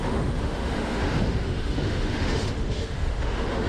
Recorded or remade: remade